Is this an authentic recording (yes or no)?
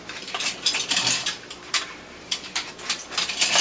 no